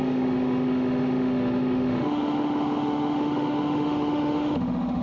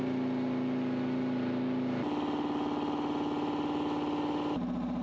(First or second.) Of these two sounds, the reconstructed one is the first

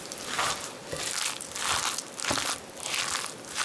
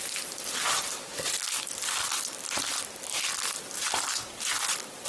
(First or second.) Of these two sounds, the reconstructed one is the second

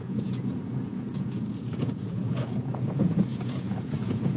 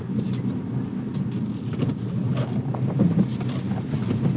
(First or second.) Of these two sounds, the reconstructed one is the first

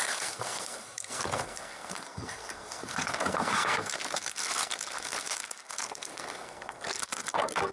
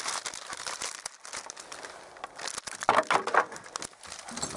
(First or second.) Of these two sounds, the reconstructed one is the first